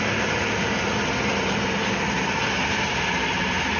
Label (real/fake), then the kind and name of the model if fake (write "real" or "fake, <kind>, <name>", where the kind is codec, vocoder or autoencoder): real